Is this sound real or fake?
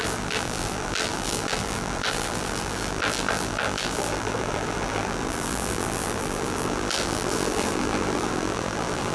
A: fake